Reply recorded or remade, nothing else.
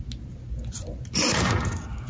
recorded